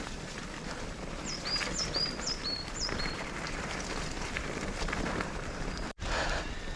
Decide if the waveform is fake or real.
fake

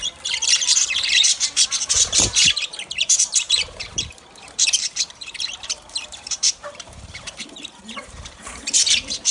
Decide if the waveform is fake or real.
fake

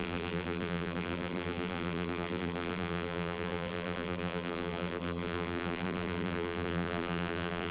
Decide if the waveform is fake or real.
fake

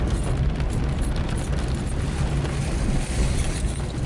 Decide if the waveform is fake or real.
fake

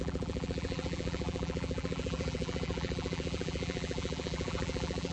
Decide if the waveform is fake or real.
fake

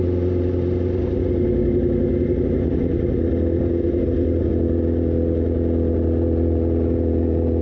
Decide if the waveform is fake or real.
real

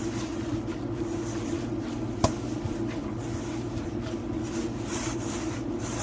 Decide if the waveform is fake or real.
fake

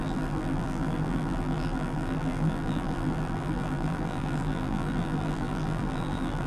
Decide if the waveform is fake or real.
fake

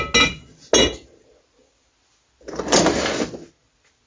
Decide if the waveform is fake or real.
real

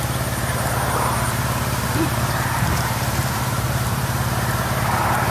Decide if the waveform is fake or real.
fake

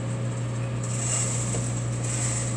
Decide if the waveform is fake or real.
real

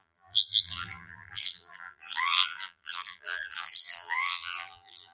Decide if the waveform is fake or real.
fake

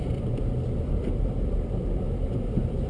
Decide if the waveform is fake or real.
fake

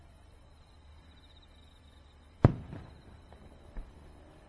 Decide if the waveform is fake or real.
fake